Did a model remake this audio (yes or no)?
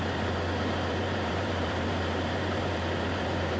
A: yes